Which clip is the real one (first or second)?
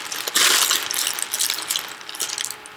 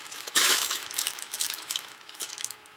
first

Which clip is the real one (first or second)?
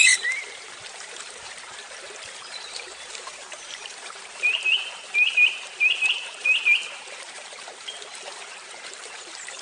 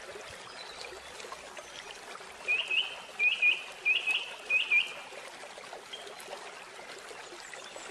second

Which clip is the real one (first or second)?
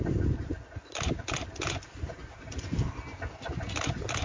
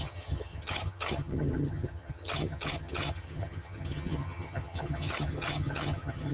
first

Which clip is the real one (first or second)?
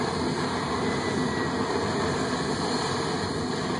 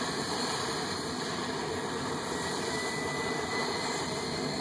first